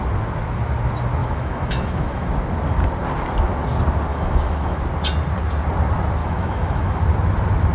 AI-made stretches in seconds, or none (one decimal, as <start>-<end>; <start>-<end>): 1.2-2.3; 4.1-4.8; 6.2-7.0